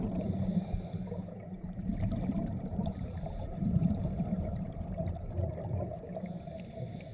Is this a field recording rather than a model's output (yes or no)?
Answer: no